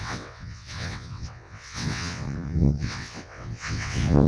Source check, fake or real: fake